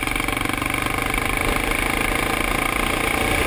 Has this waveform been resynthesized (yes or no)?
no